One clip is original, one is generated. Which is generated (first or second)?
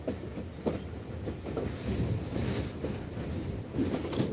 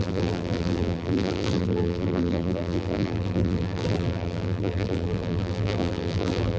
second